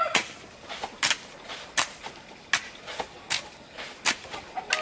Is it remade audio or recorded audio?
recorded